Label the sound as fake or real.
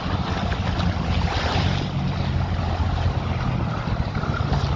real